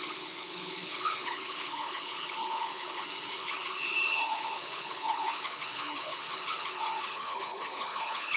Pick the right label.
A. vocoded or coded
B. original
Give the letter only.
A